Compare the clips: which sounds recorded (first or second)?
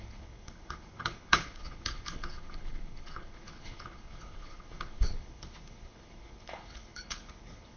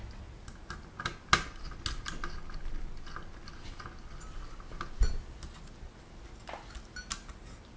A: second